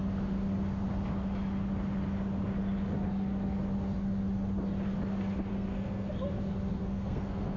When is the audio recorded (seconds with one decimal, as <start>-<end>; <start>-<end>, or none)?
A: 0.0-5.5; 6.1-6.8

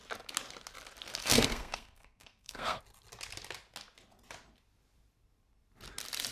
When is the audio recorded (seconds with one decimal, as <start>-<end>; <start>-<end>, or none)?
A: 0.0-1.2; 2.8-6.3